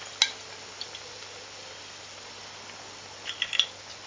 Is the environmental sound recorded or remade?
recorded